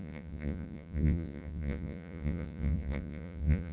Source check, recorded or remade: remade